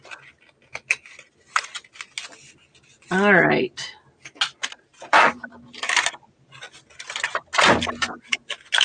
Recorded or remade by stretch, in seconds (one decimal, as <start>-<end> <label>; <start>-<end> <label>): 0.0-4.9 recorded; 4.9-6.5 remade; 6.5-8.8 recorded